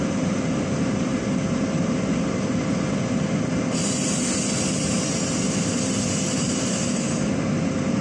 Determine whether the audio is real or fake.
fake